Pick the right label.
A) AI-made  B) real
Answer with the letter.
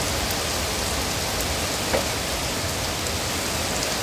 B